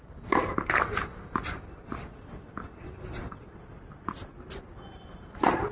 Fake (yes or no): no